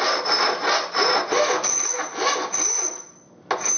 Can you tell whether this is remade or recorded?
recorded